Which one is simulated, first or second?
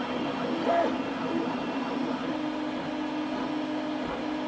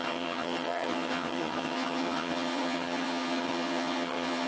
second